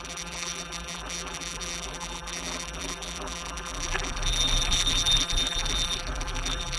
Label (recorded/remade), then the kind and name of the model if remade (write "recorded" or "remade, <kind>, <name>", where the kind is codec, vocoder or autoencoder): remade, vocoder, BigVGAN v2